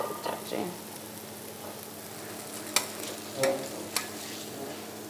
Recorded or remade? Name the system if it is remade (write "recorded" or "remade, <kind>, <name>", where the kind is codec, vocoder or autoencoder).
recorded